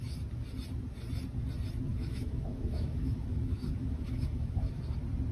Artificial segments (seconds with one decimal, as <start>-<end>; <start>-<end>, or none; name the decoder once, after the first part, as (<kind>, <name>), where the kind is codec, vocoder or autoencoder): 1.9-4.8 (autoencoder, DAC-VAE)